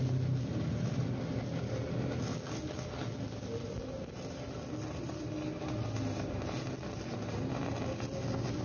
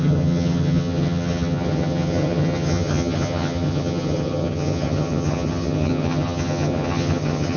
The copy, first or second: second